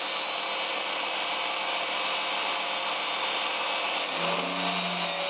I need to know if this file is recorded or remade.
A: recorded